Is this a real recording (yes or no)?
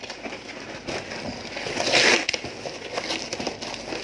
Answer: yes